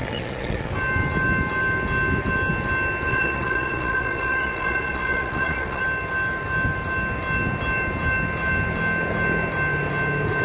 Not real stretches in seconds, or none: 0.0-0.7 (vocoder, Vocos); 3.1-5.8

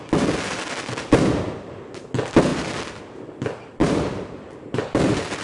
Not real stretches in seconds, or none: 3.8-5.4 (vocoder, BigVGAN v2)

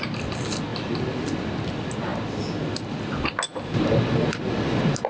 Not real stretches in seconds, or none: none

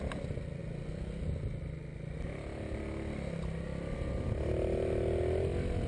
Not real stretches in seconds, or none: none

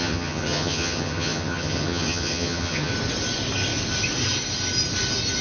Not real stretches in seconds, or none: 0.0-2.9 (vocoder, HiFi-GAN)

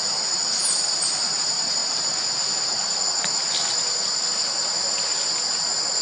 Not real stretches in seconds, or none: none